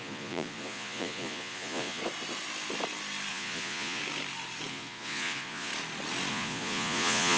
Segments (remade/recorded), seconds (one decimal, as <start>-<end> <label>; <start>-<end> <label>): 0.0-2.0 remade; 2.0-3.3 recorded; 3.3-4.0 remade; 4.0-4.7 recorded; 4.7-5.7 remade; 5.7-6.3 recorded; 6.3-7.4 remade